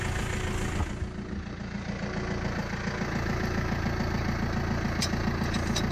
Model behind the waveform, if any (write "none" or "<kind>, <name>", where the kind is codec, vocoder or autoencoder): none